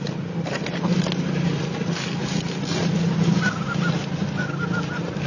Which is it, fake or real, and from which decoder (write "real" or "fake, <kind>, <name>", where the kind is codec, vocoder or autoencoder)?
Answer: real